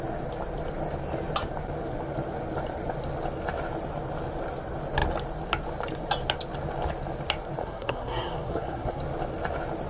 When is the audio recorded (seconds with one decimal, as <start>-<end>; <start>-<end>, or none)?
0.0-7.6; 9.0-9.9